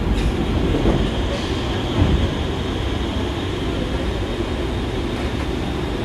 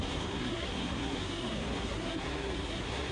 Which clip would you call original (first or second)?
first